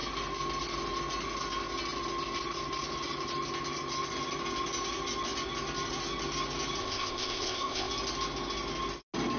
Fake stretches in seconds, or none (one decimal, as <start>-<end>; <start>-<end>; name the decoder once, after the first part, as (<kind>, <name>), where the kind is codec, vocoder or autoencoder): 6.8-7.9 (codec, ZipCodec)